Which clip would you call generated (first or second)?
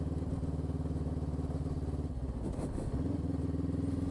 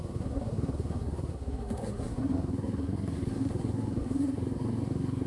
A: second